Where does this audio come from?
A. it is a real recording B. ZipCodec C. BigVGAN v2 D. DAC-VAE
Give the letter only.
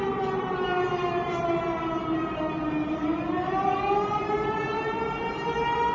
C